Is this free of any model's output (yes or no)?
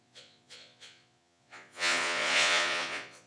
no